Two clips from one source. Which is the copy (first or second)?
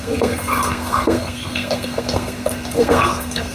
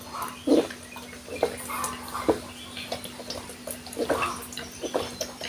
first